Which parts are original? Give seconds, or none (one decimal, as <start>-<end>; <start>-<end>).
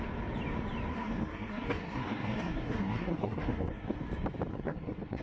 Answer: 0.0-0.9; 4.0-4.5